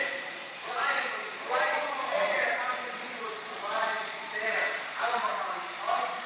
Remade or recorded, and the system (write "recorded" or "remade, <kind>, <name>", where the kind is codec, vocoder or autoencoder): remade, vocoder, Vocos